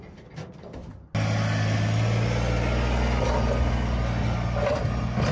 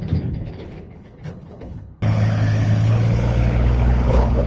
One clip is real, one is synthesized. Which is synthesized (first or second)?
second